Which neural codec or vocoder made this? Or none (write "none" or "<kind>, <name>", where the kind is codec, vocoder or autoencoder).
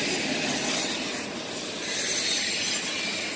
none